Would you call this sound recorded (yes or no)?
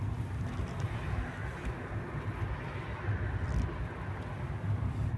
yes